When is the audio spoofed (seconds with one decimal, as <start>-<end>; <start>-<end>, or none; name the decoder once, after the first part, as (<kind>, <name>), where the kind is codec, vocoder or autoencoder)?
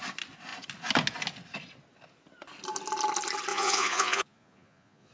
3.5-5.1 (vocoder, Vocos)